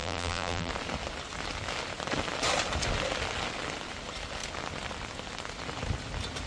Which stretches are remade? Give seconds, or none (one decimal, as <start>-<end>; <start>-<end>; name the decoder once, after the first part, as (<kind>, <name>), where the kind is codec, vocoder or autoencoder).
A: 0.0-0.7 (vocoder, BigVGAN v2)